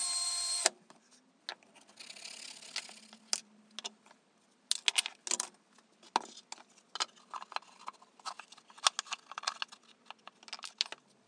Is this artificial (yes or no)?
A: no